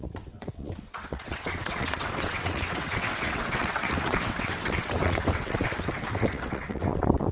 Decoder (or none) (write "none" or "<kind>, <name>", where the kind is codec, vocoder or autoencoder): vocoder, WaveNeXt